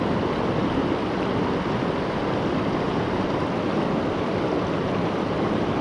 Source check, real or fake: real